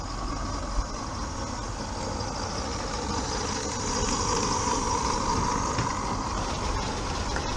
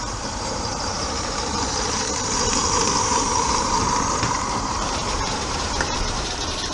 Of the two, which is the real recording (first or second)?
first